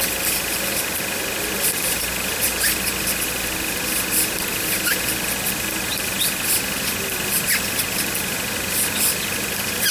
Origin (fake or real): real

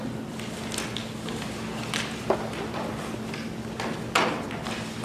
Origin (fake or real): real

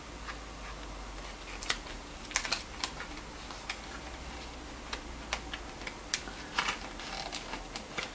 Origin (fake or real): real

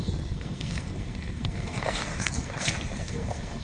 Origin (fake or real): fake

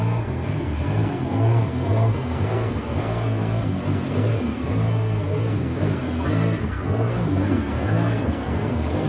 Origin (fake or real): fake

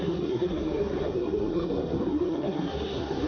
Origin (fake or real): fake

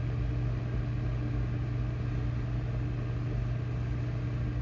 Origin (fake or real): real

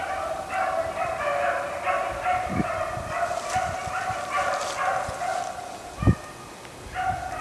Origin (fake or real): real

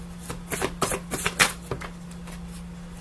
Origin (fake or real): real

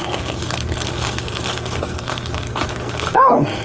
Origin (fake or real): fake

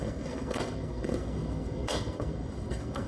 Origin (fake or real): fake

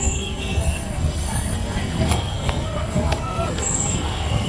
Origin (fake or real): fake